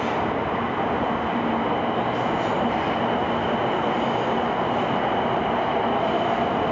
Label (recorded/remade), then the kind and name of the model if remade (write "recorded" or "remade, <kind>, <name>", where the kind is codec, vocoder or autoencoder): recorded